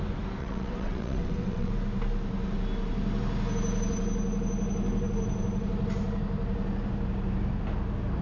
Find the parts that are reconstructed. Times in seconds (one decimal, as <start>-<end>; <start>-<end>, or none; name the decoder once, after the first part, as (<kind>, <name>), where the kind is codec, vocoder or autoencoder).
0.4-1.7 (vocoder, WaveNeXt)